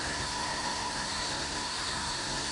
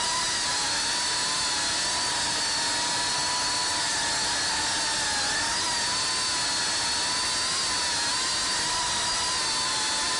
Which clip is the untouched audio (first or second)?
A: second